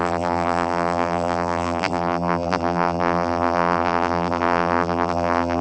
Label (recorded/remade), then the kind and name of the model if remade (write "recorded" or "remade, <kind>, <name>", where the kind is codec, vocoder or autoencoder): remade, vocoder, BigVGAN v2